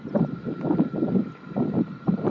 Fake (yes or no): yes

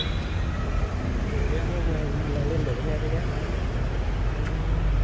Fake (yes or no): no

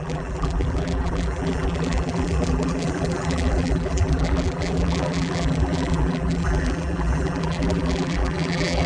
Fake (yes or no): yes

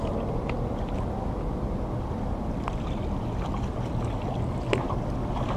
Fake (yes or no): no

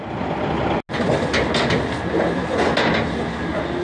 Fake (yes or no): no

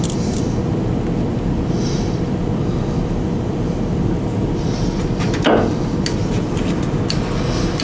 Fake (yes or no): no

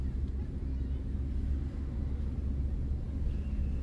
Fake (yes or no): no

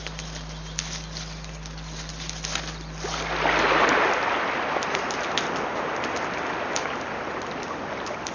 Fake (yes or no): no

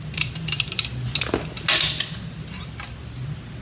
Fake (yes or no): no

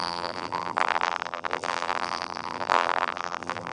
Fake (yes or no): yes